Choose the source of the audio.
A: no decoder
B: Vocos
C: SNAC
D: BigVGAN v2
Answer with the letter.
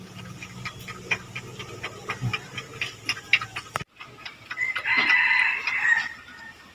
A